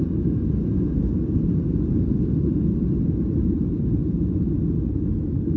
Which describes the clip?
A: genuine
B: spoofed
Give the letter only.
A